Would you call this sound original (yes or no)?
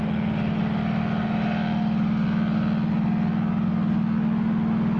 yes